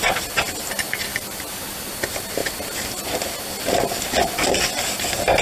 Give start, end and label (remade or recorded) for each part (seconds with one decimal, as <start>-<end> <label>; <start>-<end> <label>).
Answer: 0.0-1.1 recorded; 1.1-1.9 remade; 1.9-5.4 recorded